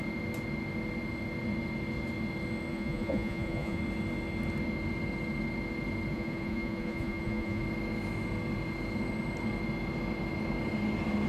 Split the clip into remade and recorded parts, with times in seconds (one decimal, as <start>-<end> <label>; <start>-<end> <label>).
0.0-2.7 recorded; 2.7-3.8 remade; 3.8-6.1 recorded; 6.1-7.6 remade; 7.6-11.3 recorded